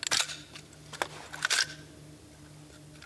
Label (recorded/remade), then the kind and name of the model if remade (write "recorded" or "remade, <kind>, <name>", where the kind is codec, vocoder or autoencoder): recorded